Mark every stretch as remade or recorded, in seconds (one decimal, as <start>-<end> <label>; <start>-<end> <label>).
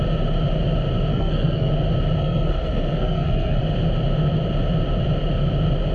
0.0-1.1 recorded; 1.1-1.7 remade; 1.7-2.2 recorded; 2.2-3.6 remade; 3.6-5.9 recorded